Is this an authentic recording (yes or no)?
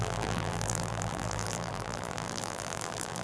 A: no